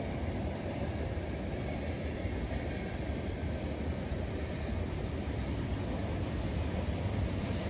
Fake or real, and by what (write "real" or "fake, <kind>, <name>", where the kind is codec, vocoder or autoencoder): fake, vocoder, BigVGAN v2